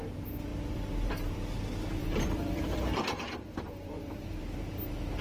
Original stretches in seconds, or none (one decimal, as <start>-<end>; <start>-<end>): 0.0-2.0; 4.4-5.2